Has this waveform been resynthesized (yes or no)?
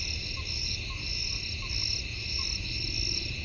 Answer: no